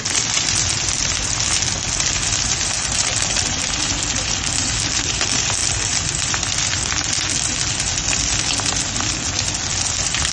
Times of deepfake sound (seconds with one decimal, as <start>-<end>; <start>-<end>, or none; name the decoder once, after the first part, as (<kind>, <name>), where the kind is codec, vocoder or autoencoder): 0.0-10.3 (vocoder, BigVGAN v2)